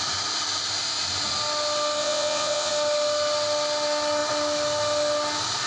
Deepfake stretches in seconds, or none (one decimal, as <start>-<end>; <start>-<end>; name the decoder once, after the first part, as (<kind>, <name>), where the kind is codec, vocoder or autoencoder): 2.0-2.7 (vocoder, WaveNeXt)